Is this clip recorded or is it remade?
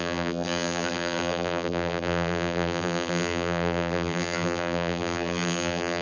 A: remade